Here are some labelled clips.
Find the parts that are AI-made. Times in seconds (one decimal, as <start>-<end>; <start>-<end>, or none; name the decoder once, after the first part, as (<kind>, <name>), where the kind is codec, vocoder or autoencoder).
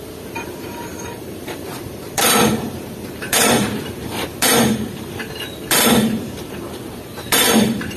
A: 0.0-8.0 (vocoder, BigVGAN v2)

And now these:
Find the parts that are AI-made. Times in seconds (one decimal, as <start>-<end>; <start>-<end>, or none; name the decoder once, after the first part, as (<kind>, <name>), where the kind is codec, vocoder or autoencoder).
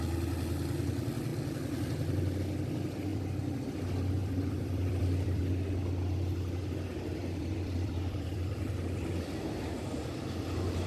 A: 3.1-3.6 (vocoder, BigVGAN v2); 4.2-5.4; 7.2-8.7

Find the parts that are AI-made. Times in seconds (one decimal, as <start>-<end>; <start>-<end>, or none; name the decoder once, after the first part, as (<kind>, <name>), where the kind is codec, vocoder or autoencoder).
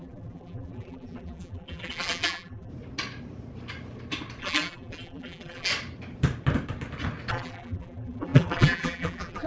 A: 0.0-2.7 (vocoder, BigVGAN v2); 4.4-5.7; 7.3-9.5